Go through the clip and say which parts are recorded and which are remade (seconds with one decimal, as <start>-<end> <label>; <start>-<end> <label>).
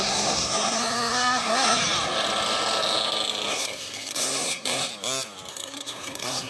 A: 0.0-1.8 remade; 1.8-3.5 recorded; 3.5-4.9 remade; 4.9-5.5 recorded; 5.5-6.5 remade